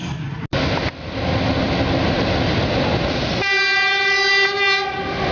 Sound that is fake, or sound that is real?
real